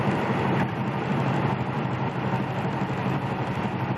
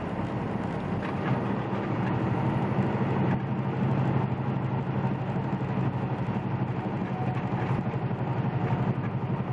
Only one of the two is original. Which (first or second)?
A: second